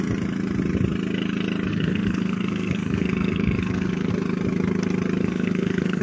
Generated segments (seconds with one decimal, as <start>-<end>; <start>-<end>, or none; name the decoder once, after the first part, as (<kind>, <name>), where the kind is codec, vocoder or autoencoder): 1.7-4.1 (codec, SNAC); 5.2-6.0